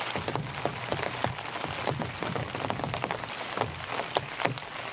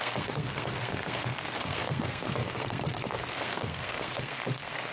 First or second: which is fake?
second